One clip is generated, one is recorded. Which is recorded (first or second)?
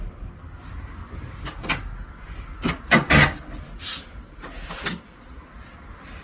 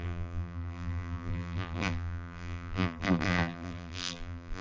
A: first